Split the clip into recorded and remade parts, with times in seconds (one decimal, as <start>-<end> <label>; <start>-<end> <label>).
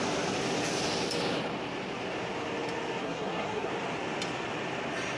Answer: 0.0-3.0 recorded; 3.0-3.7 remade; 3.7-5.2 recorded